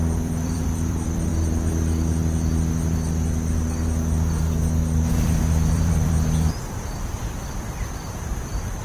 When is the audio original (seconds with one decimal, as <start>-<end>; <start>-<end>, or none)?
1.3-5.1

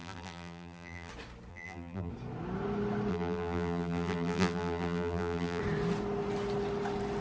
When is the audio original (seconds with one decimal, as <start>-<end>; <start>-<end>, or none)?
1.1-1.5; 2.1-3.1; 5.6-7.2

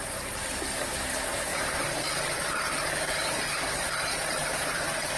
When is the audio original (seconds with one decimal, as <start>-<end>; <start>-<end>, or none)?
0.0-1.5; 4.6-5.2

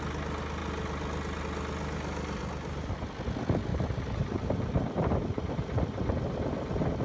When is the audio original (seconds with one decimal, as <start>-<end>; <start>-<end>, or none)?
0.0-3.7

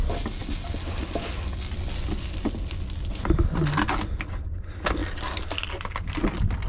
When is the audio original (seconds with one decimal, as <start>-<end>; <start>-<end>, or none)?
0.0-6.7